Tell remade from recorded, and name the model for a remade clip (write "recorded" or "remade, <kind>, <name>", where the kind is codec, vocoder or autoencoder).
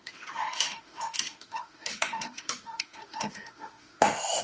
remade, autoencoder, DAC-VAE